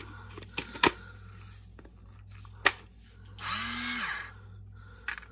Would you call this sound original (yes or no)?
yes